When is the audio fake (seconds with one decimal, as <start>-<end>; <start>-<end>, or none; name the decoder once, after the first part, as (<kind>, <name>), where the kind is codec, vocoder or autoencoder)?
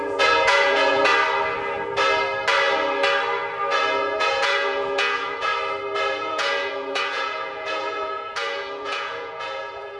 0.0-1.1 (vocoder, Vocos); 4.0-5.5; 6.1-10.0